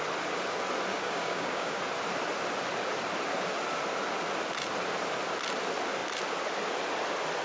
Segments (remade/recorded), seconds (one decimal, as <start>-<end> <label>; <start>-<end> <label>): 0.0-0.9 recorded; 0.9-1.8 remade; 1.8-7.4 recorded